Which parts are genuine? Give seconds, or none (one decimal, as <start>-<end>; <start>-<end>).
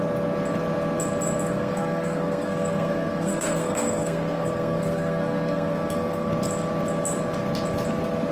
0.0-1.5; 6.3-8.3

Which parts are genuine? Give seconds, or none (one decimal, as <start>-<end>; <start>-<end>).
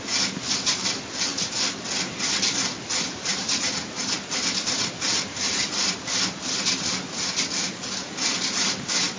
0.0-9.2